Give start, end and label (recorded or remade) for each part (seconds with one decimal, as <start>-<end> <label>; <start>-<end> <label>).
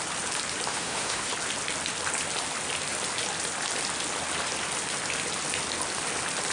0.0-0.7 recorded; 0.7-1.3 remade; 1.3-6.5 recorded